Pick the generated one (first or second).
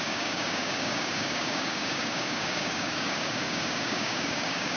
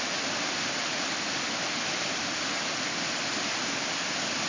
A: first